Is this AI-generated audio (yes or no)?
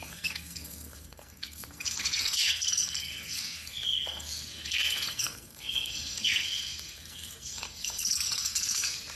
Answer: yes